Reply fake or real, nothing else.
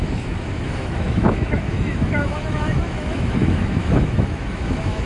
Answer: fake